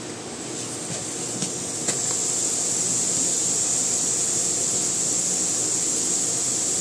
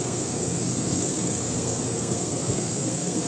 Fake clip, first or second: second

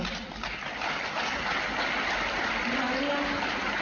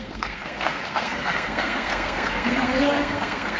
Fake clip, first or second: second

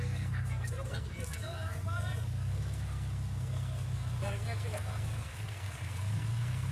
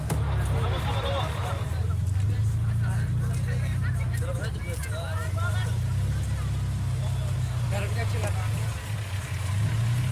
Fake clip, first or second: first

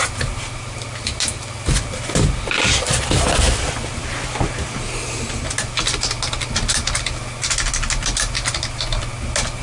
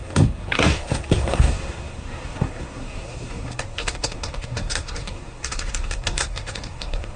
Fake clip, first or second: second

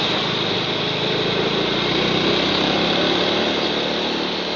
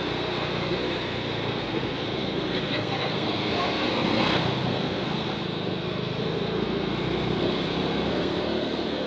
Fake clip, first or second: second